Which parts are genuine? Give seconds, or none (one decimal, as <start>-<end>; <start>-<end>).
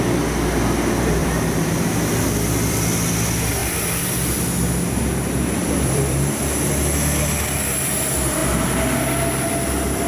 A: 0.0-1.2; 1.8-3.6; 4.4-5.6; 6.4-10.1